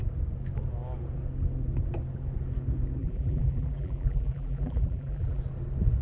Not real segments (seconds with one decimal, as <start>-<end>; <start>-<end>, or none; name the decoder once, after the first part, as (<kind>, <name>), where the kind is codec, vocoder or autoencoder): 3.0-5.4 (vocoder, BigVGAN v2)